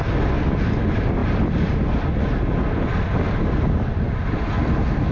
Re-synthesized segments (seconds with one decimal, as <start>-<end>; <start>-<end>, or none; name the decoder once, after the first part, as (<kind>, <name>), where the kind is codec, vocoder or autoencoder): none